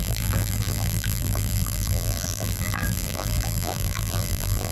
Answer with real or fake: fake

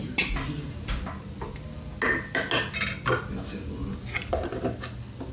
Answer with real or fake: real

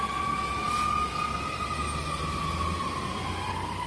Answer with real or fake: real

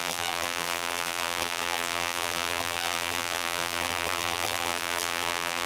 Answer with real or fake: fake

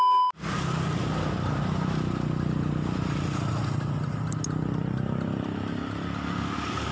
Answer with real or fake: real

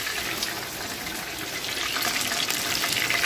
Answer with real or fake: real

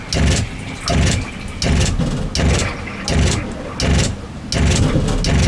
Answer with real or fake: real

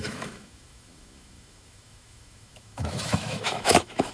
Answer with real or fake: fake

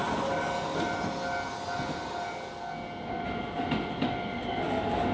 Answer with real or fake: real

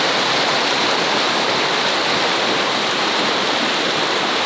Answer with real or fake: real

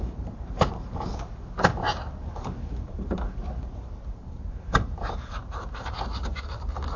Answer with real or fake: fake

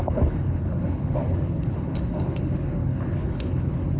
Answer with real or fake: fake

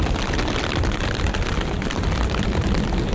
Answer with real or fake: real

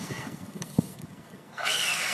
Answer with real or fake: fake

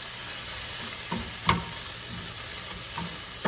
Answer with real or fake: real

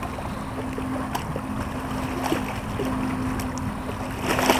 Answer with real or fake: real